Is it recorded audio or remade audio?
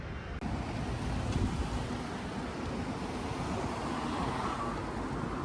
recorded